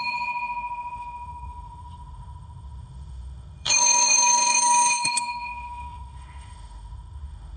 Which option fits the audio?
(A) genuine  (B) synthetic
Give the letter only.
B